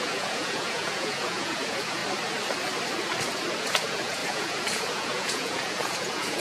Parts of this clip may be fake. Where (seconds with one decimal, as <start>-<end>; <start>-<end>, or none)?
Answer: 0.0-2.0; 3.6-6.4